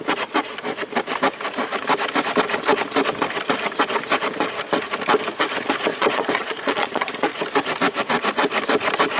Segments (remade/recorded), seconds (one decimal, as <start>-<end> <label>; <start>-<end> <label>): 0.0-5.9 recorded; 5.9-7.1 remade; 7.1-9.2 recorded